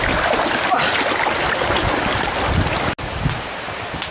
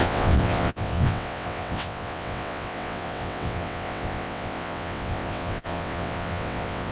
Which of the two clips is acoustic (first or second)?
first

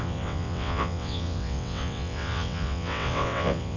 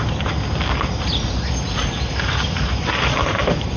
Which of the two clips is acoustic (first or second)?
second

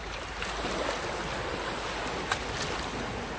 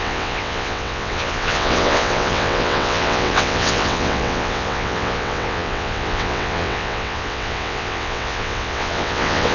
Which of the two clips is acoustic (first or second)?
first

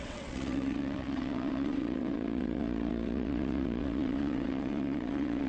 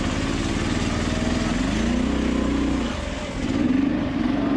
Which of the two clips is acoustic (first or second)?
second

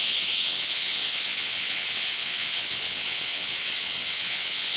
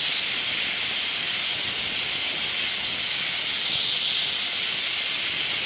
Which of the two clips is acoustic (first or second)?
second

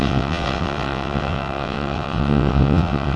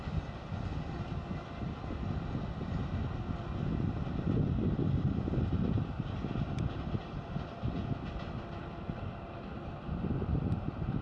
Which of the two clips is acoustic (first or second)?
second